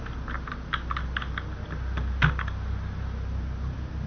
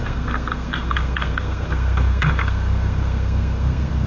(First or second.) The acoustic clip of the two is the first